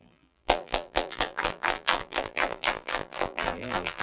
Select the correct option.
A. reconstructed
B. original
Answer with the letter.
A